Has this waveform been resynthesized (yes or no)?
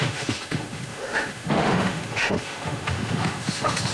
yes